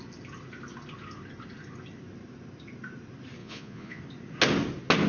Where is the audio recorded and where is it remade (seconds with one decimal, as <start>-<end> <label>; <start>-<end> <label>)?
0.0-3.4 recorded; 3.4-4.0 remade; 4.0-5.1 recorded